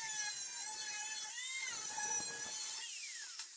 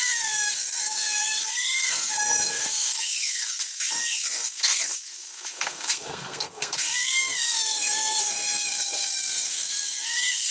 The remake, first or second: second